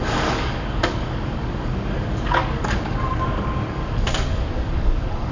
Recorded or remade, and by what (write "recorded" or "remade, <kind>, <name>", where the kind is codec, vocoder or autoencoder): remade, codec, DAC